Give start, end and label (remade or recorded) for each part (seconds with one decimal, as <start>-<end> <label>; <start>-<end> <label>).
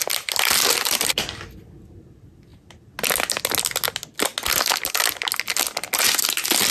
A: 0.0-6.7 recorded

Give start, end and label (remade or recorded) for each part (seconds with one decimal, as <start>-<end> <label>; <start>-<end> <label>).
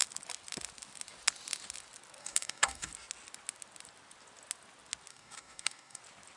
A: 0.0-2.2 recorded; 2.2-2.9 remade; 2.9-5.1 recorded; 5.1-6.0 remade; 6.0-6.4 recorded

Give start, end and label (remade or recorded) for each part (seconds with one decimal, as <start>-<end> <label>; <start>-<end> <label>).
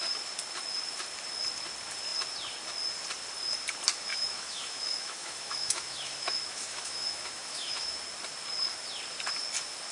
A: 0.0-4.1 recorded; 4.1-8.0 remade; 8.0-9.9 recorded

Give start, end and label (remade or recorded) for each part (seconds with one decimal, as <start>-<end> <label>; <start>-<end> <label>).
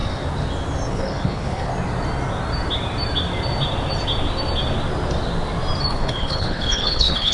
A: 0.0-0.9 recorded; 0.9-1.7 remade; 1.7-5.9 recorded; 5.9-7.3 remade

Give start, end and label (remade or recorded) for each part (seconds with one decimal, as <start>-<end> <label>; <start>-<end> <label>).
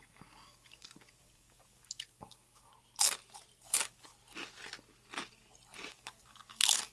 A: 0.0-2.7 remade; 2.7-3.6 recorded; 3.6-4.1 remade; 4.1-5.9 recorded; 5.9-6.9 remade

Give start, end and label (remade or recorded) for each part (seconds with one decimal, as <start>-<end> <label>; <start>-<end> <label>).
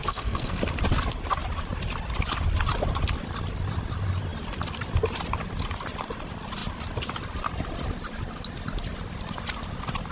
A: 0.0-0.6 remade; 0.6-10.1 recorded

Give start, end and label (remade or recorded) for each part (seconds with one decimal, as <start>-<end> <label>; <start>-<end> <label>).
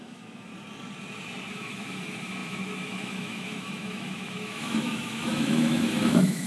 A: 0.0-0.5 remade; 0.5-1.5 recorded; 1.5-6.5 remade